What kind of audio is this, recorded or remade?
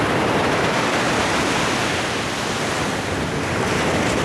recorded